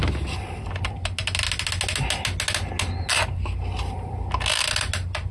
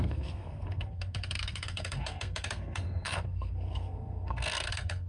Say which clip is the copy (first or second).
second